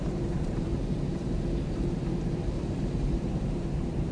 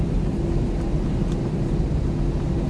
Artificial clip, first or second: first